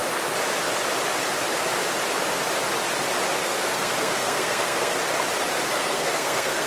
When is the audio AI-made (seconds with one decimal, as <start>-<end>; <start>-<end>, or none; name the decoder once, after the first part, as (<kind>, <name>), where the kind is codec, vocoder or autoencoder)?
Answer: 3.4-4.9 (codec, SNAC); 5.7-6.7